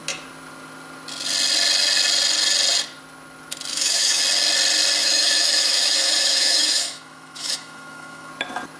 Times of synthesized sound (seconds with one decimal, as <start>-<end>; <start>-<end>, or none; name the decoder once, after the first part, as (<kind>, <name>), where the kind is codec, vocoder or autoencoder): 3.7-4.2 (autoencoder, DAC-VAE); 5.0-8.3